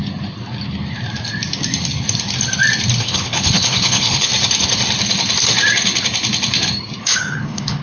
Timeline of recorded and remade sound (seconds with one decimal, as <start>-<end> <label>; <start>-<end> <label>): 0.0-3.0 recorded; 3.0-4.3 remade; 4.3-7.0 recorded; 7.0-7.8 remade